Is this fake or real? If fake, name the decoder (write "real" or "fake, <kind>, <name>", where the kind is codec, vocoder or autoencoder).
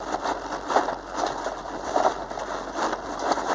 real